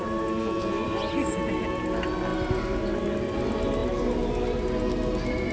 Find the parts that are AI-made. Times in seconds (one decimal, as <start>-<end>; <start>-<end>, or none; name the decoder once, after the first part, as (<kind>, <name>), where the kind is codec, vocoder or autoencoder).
none